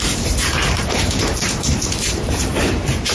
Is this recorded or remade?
remade